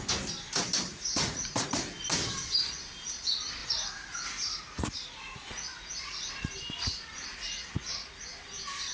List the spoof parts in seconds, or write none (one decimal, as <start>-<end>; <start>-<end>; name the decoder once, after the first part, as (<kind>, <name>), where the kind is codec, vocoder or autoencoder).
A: 0.9-1.7 (vocoder, Vocos); 3.6-6.3; 7.3-8.2